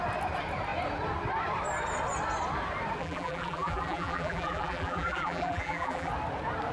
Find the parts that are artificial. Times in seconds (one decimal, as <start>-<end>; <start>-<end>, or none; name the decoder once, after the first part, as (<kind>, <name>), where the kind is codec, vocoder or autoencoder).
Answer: 3.0-6.1 (vocoder, BigVGAN v2)